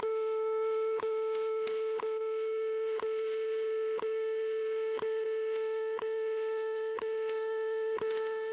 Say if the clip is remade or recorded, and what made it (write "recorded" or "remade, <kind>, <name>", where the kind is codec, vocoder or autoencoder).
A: remade, autoencoder, DAC-VAE